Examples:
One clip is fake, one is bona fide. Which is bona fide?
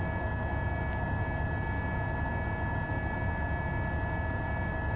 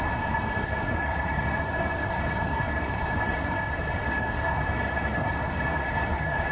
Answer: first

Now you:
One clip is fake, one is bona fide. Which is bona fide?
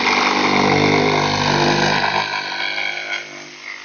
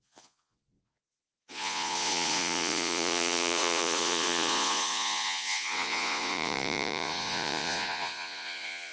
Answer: first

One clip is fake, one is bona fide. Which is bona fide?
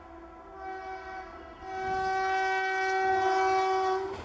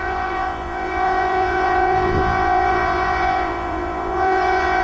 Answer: first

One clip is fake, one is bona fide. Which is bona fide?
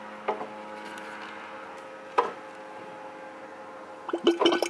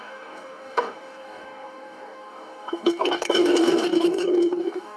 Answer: first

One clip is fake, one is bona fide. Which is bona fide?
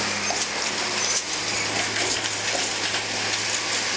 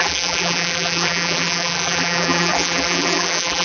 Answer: first